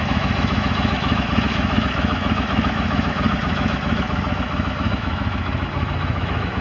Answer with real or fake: fake